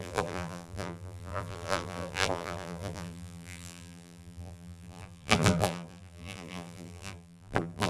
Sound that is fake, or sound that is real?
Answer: fake